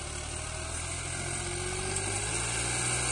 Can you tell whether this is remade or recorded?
recorded